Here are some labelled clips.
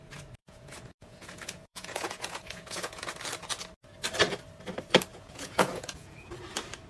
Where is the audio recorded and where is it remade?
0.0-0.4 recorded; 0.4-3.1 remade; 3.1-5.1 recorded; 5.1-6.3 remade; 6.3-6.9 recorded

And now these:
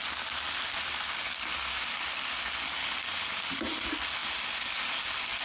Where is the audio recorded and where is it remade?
0.0-5.4 recorded